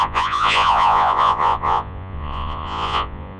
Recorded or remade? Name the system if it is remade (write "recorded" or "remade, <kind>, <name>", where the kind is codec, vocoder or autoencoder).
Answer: remade, vocoder, Vocos